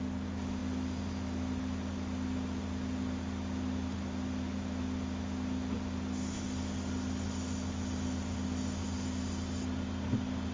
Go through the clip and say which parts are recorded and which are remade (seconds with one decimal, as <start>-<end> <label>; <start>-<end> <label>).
0.0-10.5 recorded